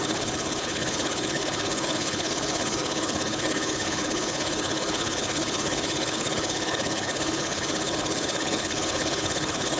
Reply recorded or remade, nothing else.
remade